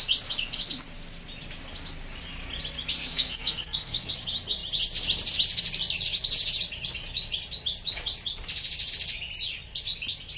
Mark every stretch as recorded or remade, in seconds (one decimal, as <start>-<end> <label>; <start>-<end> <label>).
0.0-3.0 recorded; 3.0-4.1 remade; 4.1-10.4 recorded